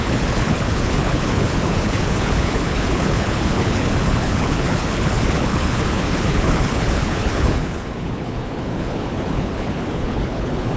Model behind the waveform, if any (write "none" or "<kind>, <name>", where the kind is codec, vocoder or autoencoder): codec, HILCodec